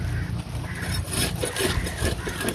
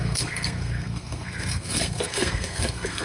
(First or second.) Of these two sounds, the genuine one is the first